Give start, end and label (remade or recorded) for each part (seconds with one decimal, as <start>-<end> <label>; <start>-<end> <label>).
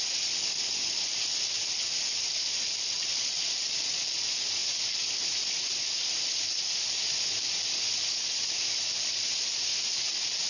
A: 0.0-10.5 recorded